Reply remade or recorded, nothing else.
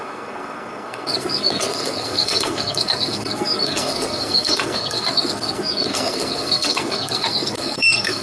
remade